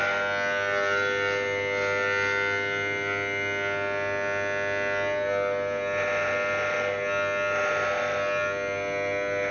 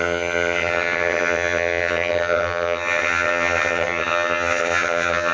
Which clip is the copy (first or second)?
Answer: second